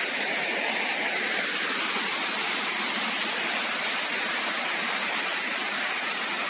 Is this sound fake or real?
real